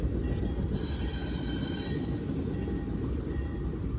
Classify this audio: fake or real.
real